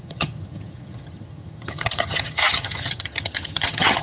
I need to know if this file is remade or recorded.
remade